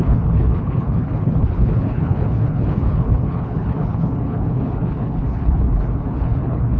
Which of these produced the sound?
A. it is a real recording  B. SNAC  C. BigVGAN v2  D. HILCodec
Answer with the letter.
D